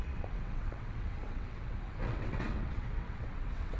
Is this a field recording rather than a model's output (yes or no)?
no